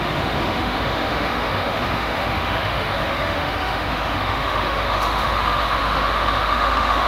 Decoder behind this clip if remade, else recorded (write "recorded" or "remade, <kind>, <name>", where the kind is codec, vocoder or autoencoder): remade, autoencoder, DAC-VAE